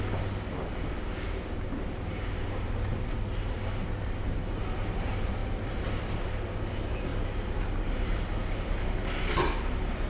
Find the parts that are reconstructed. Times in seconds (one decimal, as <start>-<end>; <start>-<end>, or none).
5.4-6.0